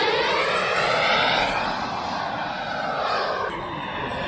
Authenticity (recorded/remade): recorded